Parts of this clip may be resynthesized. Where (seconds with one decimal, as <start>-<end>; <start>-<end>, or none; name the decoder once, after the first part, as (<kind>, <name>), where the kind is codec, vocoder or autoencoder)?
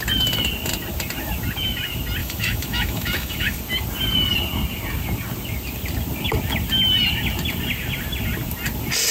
2.2-3.6 (autoencoder, DAC-VAE)